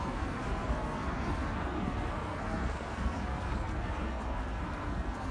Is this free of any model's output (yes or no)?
no